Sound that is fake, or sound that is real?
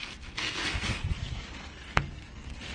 fake